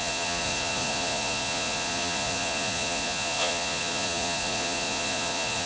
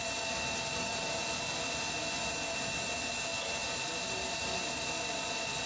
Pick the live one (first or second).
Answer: second